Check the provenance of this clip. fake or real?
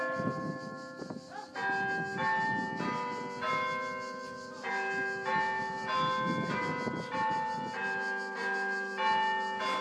real